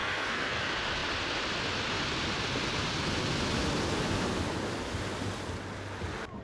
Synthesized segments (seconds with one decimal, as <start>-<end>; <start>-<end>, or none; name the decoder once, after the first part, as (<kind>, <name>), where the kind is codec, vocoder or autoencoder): 0.0-0.6 (codec, SNAC)